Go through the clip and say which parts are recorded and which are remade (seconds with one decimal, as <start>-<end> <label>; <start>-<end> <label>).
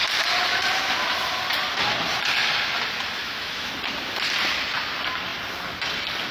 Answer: 0.0-3.2 recorded; 3.2-3.7 remade; 3.7-6.3 recorded